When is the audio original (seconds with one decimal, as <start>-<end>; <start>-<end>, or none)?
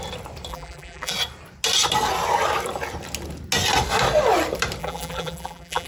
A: 0.0-0.5; 1.1-4.8